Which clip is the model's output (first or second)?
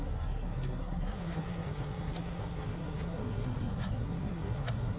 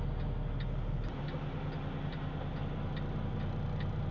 first